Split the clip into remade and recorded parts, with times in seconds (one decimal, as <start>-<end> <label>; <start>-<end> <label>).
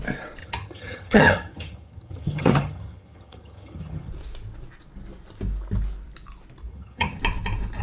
0.0-0.4 recorded; 0.4-4.1 remade; 4.1-6.7 recorded; 6.7-7.2 remade; 7.2-7.8 recorded